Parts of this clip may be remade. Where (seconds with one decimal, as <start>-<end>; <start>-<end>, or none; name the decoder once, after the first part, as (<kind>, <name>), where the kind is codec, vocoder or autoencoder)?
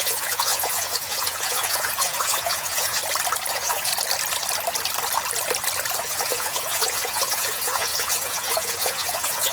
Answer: 0.0-3.0 (vocoder, Vocos); 3.5-3.9; 6.0-9.5